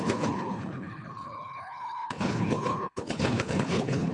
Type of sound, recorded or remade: remade